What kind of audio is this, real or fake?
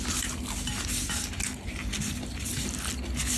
real